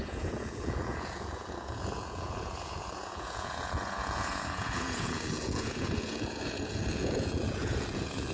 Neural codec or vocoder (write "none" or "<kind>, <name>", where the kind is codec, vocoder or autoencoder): vocoder, Vocos